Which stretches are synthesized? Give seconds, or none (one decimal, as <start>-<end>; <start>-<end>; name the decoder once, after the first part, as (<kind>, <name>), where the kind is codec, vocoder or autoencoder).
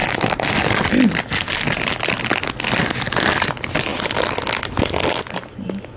none